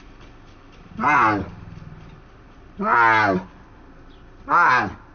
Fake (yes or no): no